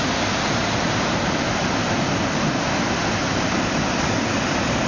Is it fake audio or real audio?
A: real